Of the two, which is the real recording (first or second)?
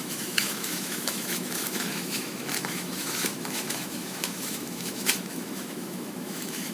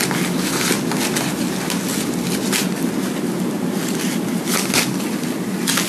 second